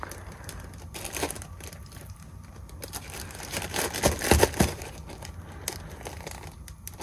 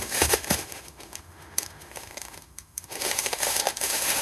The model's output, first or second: second